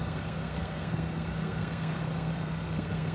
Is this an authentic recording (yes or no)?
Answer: no